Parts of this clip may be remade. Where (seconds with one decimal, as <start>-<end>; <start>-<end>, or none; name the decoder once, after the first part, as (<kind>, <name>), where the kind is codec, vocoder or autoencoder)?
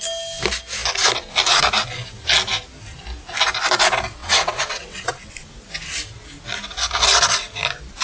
4.2-5.3 (vocoder, WaveNeXt)